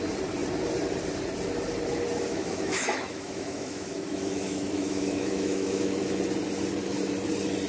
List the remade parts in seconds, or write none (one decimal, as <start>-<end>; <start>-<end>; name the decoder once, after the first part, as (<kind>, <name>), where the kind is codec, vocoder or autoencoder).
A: 2.3-6.2 (autoencoder, DAC-VAE)